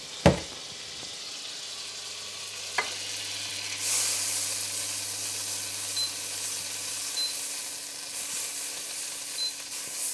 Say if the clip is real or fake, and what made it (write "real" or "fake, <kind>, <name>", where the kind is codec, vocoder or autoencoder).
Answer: real